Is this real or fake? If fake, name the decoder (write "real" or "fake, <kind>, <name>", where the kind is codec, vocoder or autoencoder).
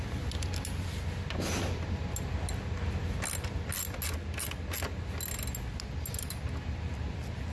real